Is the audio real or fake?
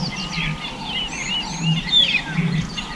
real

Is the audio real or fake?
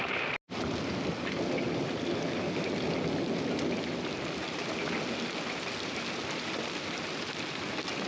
real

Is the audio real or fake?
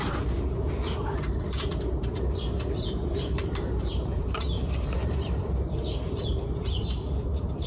fake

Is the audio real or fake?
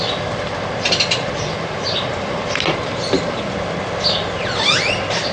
real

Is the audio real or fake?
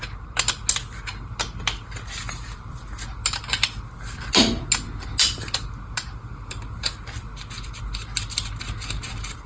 real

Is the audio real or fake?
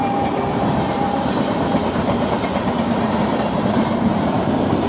fake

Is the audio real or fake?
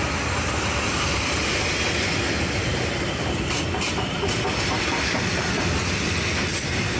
real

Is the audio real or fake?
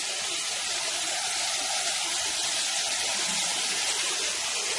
real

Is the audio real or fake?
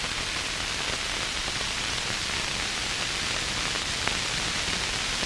real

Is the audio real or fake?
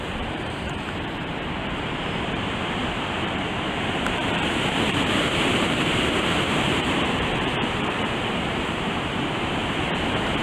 fake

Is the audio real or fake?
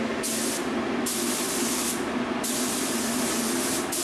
real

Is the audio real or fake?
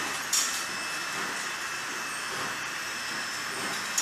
real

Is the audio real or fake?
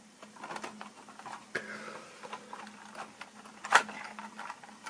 real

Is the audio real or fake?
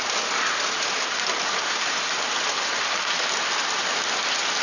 fake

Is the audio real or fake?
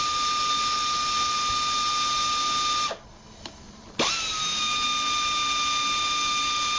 real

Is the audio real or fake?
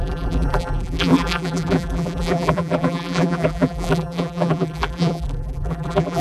fake